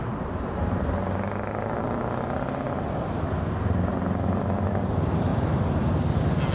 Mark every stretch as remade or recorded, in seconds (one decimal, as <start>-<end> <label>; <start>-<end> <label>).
0.0-5.3 recorded; 5.3-5.9 remade; 5.9-6.5 recorded